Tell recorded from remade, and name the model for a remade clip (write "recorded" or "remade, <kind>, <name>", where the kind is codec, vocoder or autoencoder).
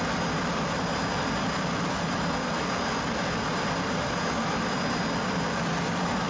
recorded